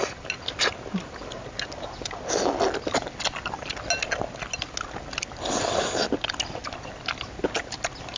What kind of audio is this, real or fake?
real